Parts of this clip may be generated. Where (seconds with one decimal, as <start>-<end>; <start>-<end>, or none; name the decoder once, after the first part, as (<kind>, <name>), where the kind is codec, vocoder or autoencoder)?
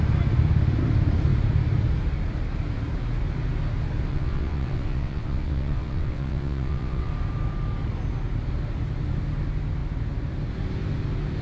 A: 4.1-7.1 (vocoder, WaveNeXt)